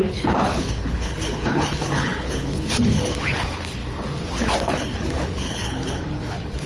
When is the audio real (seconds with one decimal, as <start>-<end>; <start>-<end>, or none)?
3.8-4.6